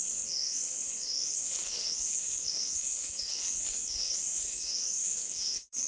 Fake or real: fake